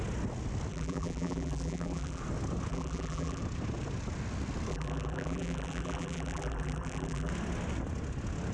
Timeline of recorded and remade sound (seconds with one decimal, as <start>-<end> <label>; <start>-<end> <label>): 0.0-0.7 recorded; 0.7-2.2 remade; 2.2-2.7 recorded; 2.7-3.4 remade; 3.4-4.7 recorded; 4.7-7.3 remade; 7.3-8.5 recorded